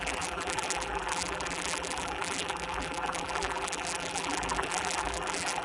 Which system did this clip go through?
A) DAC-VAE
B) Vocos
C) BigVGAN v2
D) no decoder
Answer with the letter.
C